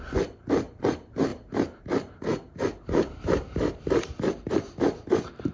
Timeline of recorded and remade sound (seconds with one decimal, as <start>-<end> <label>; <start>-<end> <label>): 0.0-5.5 remade